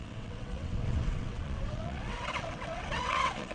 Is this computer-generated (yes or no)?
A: yes